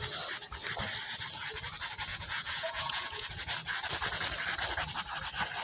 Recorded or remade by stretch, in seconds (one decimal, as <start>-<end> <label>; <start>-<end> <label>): 0.0-2.1 recorded; 2.1-3.3 remade; 3.3-5.6 recorded